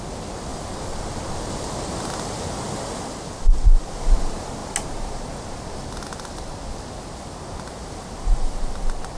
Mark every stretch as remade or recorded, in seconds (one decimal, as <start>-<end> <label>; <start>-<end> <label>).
0.0-9.2 recorded